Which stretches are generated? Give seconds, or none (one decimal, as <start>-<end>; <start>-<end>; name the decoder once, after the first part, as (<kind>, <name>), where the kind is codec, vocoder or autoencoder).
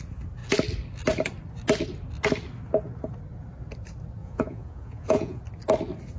4.2-5.4 (vocoder, Vocos)